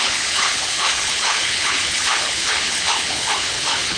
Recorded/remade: remade